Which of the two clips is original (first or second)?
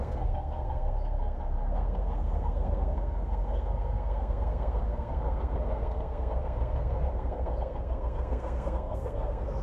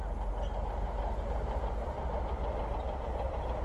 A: second